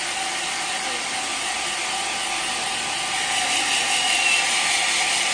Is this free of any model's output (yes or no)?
yes